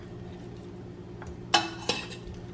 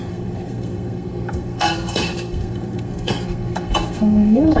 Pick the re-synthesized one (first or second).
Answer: second